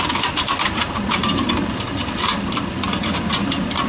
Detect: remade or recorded recorded